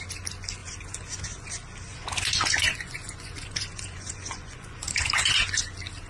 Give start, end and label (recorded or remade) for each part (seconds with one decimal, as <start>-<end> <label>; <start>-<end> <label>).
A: 0.0-0.6 recorded; 0.6-1.5 remade; 1.5-1.9 recorded; 1.9-5.6 remade; 5.6-6.1 recorded